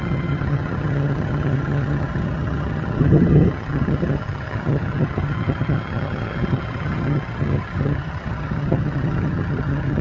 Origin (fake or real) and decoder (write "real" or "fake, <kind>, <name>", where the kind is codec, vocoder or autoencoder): fake, vocoder, HiFi-GAN